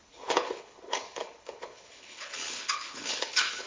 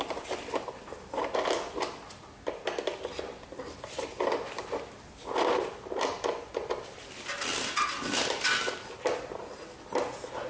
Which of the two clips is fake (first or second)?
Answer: first